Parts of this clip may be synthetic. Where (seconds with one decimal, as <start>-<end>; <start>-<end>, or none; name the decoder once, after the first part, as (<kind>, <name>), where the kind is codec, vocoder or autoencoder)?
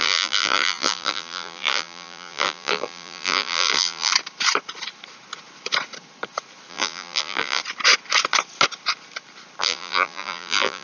0.0-4.1 (vocoder, BigVGAN v2); 6.7-7.6; 9.6-10.8